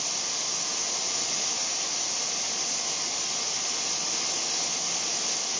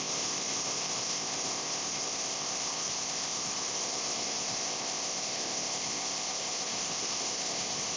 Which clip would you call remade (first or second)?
second